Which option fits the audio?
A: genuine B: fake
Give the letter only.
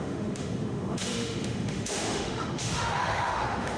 B